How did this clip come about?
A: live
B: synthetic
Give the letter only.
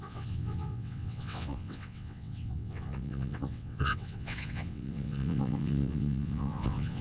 B